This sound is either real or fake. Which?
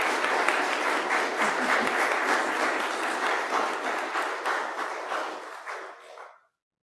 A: real